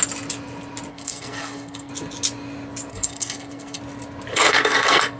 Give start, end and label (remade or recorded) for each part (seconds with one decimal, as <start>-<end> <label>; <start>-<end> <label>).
0.0-0.9 recorded; 0.9-1.9 remade; 1.9-2.9 recorded; 2.9-3.8 remade; 3.8-4.3 recorded; 4.3-5.2 remade